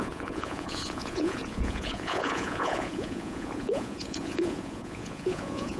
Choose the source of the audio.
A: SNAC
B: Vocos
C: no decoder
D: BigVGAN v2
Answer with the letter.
B